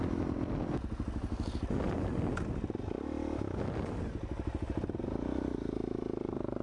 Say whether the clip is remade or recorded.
recorded